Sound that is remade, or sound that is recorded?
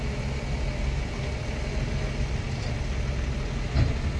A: recorded